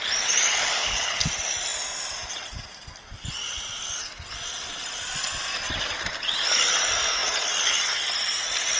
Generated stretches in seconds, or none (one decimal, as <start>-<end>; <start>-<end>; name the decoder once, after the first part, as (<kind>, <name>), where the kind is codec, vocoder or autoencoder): 0.6-1.2 (codec, HILCodec)